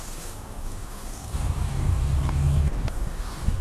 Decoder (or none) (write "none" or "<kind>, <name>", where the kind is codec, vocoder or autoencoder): codec, DAC